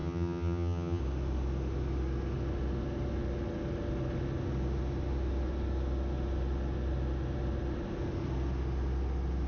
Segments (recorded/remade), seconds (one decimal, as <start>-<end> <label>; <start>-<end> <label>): 0.0-1.0 remade; 1.0-9.5 recorded